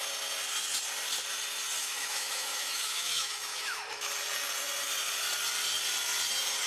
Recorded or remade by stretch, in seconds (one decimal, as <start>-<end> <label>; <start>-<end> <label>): 0.0-1.8 recorded; 1.8-4.1 remade; 4.1-6.7 recorded